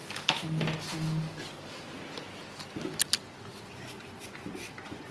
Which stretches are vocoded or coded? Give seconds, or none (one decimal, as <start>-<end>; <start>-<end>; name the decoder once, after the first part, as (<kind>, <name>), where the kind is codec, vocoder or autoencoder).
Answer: 3.5-5.1 (vocoder, Vocos)